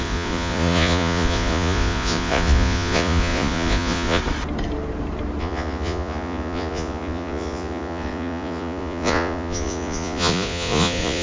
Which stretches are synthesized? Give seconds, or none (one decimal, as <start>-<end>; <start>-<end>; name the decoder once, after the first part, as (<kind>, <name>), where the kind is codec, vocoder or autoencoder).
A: 0.0-4.2 (vocoder, Vocos); 5.4-11.2